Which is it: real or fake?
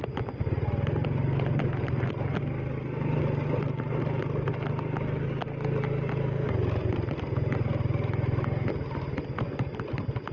real